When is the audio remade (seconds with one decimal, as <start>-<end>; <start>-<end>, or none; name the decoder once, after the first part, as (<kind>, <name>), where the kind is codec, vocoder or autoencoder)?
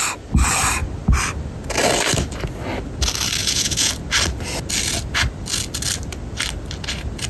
3.4-3.9 (vocoder, Vocos)